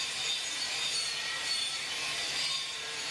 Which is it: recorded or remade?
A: remade